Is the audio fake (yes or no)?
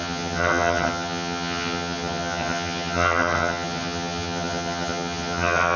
yes